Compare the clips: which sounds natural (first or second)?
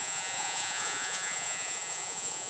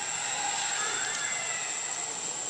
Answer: second